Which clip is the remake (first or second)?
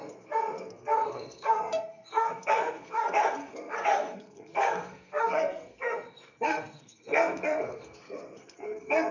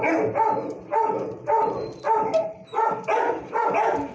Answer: first